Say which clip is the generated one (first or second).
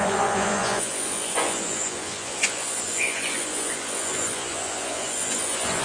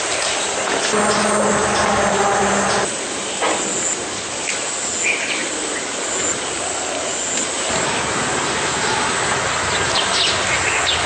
first